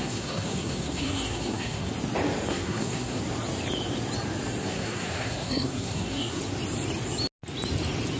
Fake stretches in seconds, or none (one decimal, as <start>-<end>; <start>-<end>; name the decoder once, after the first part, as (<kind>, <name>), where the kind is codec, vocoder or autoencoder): 0.0-1.9 (codec, SNAC); 2.5-3.2; 4.6-6.4